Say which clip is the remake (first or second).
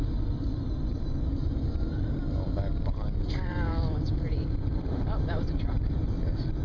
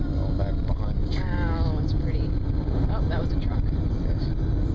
first